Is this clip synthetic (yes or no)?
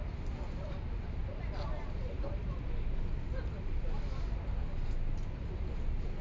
no